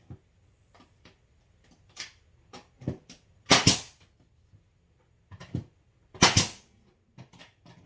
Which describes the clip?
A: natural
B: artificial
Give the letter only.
A